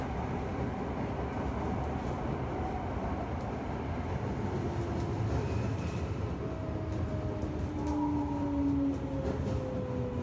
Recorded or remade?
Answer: recorded